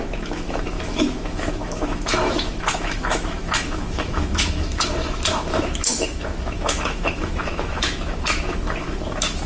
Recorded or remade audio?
remade